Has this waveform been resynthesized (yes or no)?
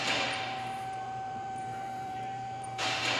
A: yes